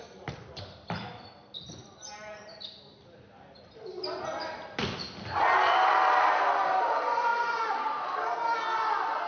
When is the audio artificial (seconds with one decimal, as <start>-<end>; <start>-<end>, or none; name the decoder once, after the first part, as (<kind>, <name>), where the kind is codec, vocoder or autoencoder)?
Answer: none